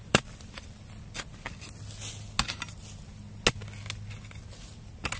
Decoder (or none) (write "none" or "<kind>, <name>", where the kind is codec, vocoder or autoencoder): none